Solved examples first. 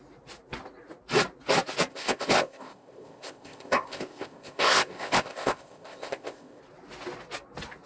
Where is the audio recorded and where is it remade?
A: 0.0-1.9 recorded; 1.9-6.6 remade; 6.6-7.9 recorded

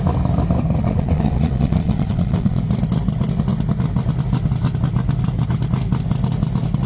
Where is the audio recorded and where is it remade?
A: 0.0-0.8 recorded; 0.8-2.6 remade; 2.6-6.9 recorded

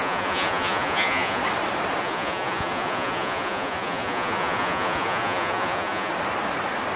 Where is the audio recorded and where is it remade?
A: 0.0-1.4 remade; 1.4-2.0 recorded; 2.0-6.1 remade; 6.1-7.0 recorded

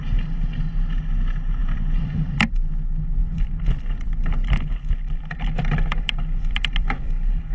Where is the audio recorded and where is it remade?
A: 0.0-1.6 recorded; 1.6-2.7 remade; 2.7-3.2 recorded; 3.2-7.5 remade

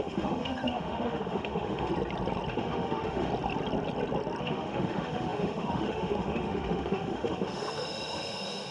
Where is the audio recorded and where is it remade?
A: 0.0-1.9 remade; 1.9-2.5 recorded; 2.5-3.3 remade; 3.3-4.4 recorded; 4.4-8.7 remade

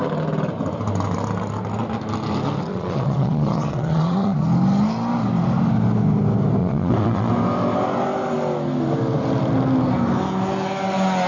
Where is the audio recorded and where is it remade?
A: 0.0-2.7 recorded; 2.7-4.4 remade; 4.4-6.6 recorded; 6.6-7.3 remade; 7.3-11.3 recorded